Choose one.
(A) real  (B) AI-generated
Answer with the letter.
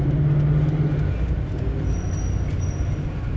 A